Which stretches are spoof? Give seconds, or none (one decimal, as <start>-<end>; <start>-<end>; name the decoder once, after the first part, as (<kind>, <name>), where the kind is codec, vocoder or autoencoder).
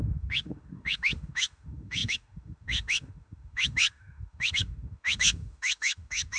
0.0-6.4 (autoencoder, DAC-VAE)